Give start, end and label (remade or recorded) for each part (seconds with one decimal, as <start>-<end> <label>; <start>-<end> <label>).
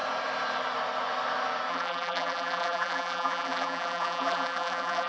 0.0-1.7 recorded; 1.7-5.1 remade